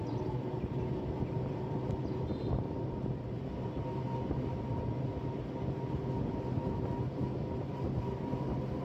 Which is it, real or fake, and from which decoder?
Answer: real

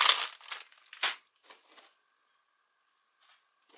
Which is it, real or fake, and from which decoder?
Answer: real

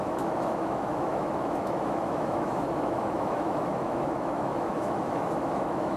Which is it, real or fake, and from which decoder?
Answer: fake, autoencoder, DAC-VAE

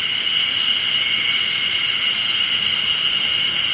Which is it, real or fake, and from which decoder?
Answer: real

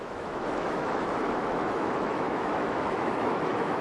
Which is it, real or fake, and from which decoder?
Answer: fake, autoencoder, DAC-VAE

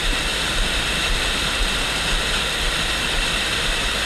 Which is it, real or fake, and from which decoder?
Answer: real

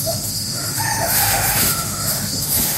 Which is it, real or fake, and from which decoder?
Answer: fake, autoencoder, DAC-VAE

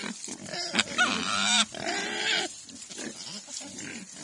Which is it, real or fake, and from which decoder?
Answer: real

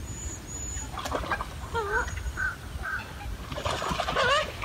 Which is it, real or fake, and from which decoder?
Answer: real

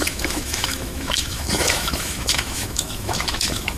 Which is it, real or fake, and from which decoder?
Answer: fake, autoencoder, DAC-VAE